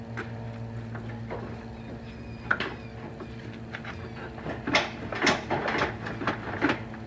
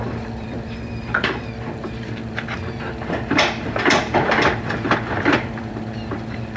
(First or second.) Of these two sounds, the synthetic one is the second